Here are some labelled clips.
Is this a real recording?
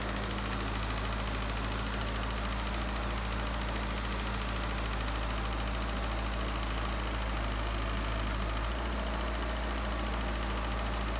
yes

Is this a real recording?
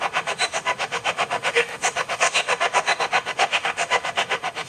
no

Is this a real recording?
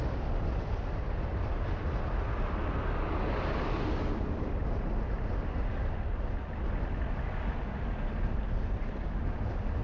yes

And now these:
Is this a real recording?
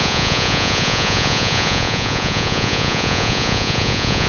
no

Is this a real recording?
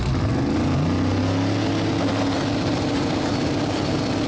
yes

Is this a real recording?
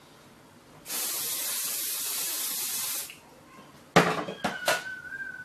yes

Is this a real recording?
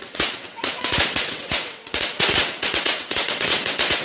no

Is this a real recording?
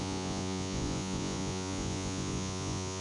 no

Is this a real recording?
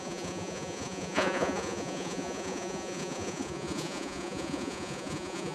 no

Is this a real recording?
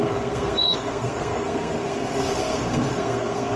no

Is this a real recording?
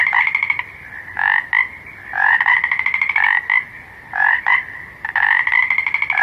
yes